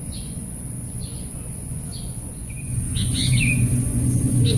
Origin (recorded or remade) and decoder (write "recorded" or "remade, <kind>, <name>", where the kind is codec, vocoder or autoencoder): remade, vocoder, Vocos